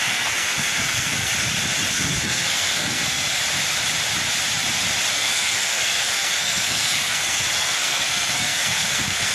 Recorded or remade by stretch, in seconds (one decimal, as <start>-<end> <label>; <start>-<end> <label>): 0.0-1.3 remade; 1.3-1.9 recorded; 1.9-3.4 remade; 3.4-5.1 recorded; 5.1-9.3 remade